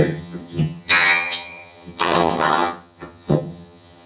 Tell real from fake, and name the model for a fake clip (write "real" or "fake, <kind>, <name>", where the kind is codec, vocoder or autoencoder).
fake, vocoder, HiFi-GAN